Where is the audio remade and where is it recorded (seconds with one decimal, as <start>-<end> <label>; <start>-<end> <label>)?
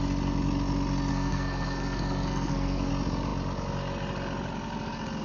0.0-1.1 recorded; 1.1-2.9 remade; 2.9-5.2 recorded